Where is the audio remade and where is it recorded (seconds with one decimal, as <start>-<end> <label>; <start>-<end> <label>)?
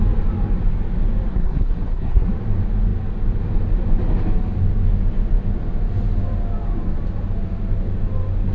0.0-1.3 recorded; 1.3-2.3 remade; 2.3-8.5 recorded